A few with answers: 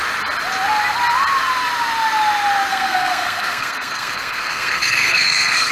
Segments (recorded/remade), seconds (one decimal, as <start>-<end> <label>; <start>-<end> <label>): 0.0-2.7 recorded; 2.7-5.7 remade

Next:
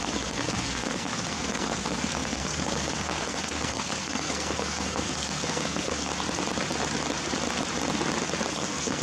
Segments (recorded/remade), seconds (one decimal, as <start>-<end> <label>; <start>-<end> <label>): 0.0-6.1 remade; 6.1-8.5 recorded; 8.5-9.0 remade

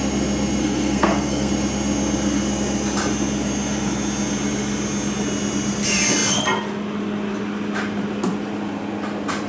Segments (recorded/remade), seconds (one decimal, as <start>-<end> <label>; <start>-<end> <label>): 0.0-0.6 recorded; 0.6-1.5 remade; 1.5-9.5 recorded